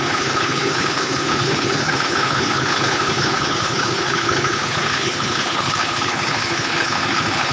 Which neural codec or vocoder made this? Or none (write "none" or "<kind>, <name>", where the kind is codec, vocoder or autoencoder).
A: codec, HILCodec